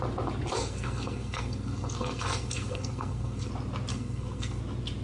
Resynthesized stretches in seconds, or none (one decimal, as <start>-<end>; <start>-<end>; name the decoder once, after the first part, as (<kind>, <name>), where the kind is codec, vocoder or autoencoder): 0.5-3.5 (codec, SNAC); 3.9-4.6